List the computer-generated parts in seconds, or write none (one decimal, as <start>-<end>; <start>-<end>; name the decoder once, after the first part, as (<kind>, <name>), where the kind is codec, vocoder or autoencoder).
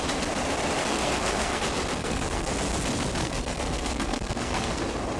0.8-1.6 (codec, SNAC); 2.0-2.5; 3.2-4.8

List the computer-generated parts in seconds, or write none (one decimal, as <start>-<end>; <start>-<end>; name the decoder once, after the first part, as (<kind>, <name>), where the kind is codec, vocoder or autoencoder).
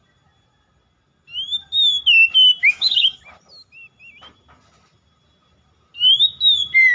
2.6-3.2 (codec, DAC)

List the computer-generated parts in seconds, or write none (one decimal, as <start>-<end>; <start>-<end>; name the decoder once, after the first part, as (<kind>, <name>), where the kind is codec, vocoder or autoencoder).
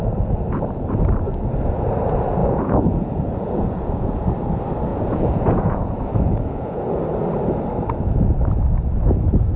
2.4-4.1 (vocoder, Vocos); 4.9-7.0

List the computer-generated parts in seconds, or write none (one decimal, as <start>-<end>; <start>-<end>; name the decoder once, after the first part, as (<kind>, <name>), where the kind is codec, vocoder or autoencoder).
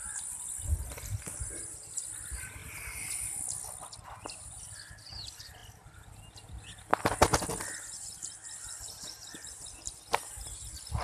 none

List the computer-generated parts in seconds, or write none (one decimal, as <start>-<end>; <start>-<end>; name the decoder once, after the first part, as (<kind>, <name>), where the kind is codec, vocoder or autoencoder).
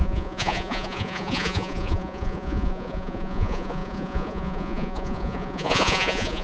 0.0-6.4 (vocoder, Vocos)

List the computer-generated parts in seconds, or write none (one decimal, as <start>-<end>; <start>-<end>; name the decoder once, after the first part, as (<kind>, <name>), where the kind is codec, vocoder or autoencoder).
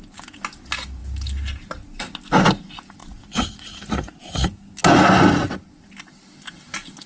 3.0-4.5 (vocoder, Vocos)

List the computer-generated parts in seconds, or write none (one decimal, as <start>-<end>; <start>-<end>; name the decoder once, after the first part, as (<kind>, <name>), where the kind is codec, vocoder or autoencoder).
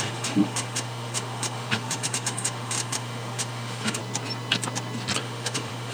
0.0-4.0 (autoencoder, DAC-VAE); 5.2-5.9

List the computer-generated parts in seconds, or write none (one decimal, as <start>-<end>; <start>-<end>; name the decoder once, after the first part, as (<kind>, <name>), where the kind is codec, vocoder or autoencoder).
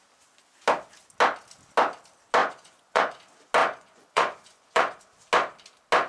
2.4-3.2 (vocoder, Vocos); 3.6-5.0